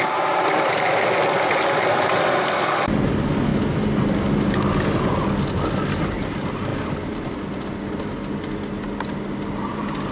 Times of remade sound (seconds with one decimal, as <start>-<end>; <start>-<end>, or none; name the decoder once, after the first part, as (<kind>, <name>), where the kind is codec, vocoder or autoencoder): 0.0-3.5 (vocoder, BigVGAN v2); 5.2-6.7; 9.7-10.1